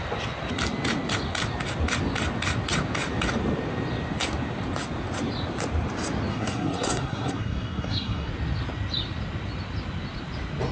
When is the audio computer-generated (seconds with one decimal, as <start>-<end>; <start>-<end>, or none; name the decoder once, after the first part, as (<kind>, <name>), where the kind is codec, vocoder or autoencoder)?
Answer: 6.3-8.3 (codec, SNAC)